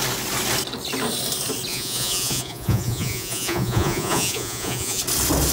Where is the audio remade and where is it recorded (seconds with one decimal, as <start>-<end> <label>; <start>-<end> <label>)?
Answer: 0.0-1.7 recorded; 1.7-5.0 remade; 5.0-5.5 recorded